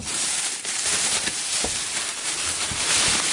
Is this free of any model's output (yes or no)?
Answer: no